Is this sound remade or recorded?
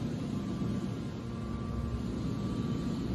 recorded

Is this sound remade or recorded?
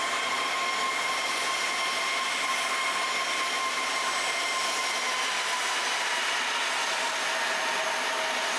recorded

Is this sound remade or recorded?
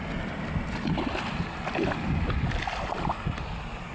recorded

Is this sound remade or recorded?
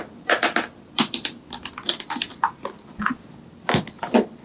recorded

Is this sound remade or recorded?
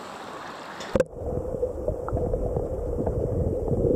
recorded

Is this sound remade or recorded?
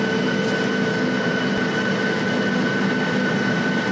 recorded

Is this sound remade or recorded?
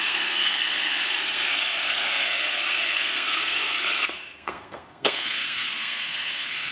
remade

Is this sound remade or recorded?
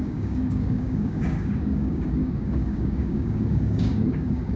remade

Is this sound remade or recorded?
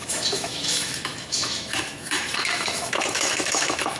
remade